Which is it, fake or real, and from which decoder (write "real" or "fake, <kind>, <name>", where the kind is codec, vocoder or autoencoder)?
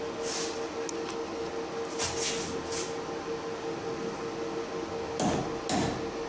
real